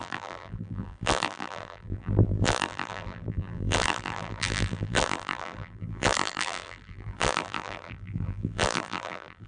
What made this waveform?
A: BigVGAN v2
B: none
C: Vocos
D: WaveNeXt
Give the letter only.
A